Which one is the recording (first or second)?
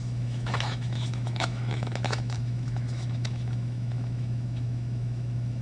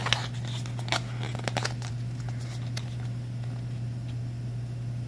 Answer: second